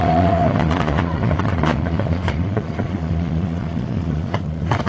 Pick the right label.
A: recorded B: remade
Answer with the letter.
B